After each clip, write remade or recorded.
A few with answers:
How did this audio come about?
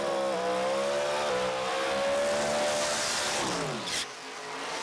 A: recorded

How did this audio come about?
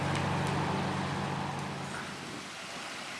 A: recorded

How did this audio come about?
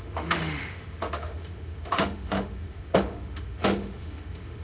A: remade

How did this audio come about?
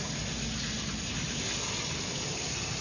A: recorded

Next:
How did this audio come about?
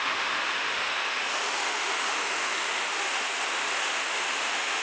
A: remade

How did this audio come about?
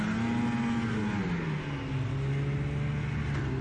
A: recorded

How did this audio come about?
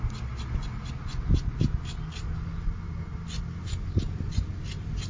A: recorded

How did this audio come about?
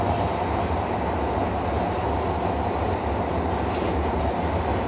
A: recorded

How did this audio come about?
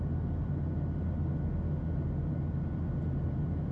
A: recorded